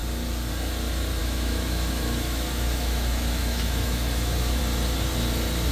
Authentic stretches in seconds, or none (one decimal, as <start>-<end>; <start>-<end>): 0.0-1.2; 4.6-5.7